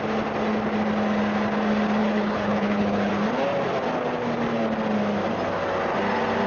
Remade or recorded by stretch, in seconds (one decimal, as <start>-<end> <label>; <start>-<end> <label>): 0.0-2.0 recorded; 2.0-3.1 remade; 3.1-6.5 recorded